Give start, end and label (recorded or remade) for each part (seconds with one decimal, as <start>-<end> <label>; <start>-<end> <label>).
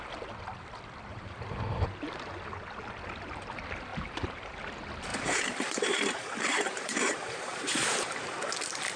0.0-1.1 recorded; 1.1-1.9 remade; 1.9-3.9 recorded; 3.9-4.6 remade; 4.6-5.1 recorded; 5.1-8.2 remade; 8.2-9.0 recorded